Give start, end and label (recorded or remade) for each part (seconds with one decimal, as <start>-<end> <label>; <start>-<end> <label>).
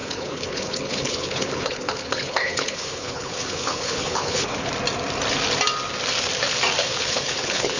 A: 0.0-4.7 remade; 4.7-6.8 recorded; 6.8-7.8 remade